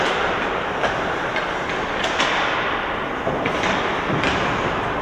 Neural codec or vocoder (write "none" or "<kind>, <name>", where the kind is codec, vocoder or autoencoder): none